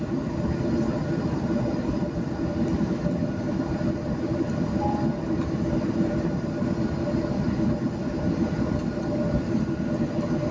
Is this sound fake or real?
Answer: real